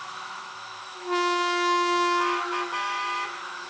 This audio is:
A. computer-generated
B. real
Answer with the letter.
A